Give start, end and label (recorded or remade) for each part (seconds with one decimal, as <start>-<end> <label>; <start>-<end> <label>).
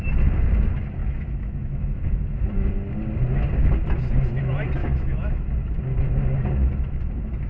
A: 0.0-1.0 recorded; 1.0-2.7 remade; 2.7-4.8 recorded; 4.8-5.5 remade; 5.5-7.5 recorded